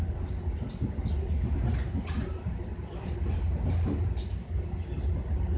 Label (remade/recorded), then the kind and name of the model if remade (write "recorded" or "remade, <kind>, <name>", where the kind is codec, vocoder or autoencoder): recorded